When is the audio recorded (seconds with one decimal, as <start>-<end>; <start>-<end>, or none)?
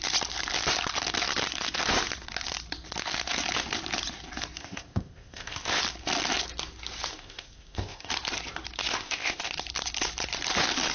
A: 0.0-4.6; 5.8-7.1; 8.1-8.9; 9.5-10.9